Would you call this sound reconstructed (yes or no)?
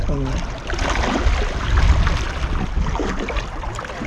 no